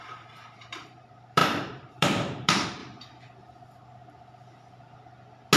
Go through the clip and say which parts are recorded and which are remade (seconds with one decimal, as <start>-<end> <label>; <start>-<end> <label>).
0.0-2.8 remade; 2.8-5.6 recorded